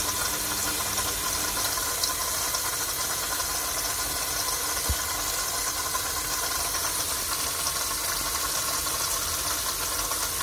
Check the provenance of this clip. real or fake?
real